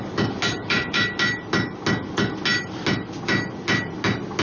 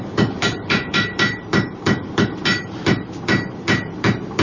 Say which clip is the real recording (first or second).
first